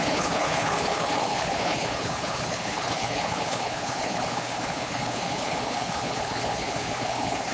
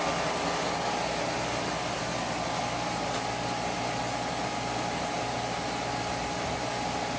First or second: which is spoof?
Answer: first